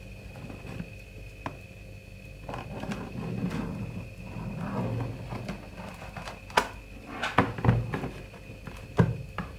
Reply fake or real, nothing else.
real